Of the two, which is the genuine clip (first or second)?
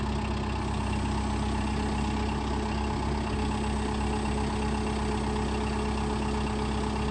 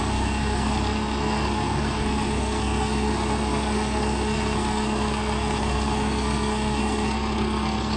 first